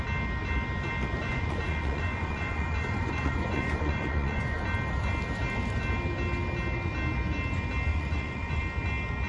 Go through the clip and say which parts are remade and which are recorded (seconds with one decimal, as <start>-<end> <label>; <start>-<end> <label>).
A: 0.0-1.2 recorded; 1.2-4.6 remade; 4.6-7.9 recorded; 7.9-8.6 remade; 8.6-9.3 recorded